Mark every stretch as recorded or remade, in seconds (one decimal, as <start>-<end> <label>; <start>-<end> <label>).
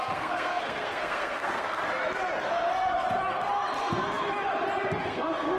0.0-1.8 remade; 1.8-5.0 recorded; 5.0-5.6 remade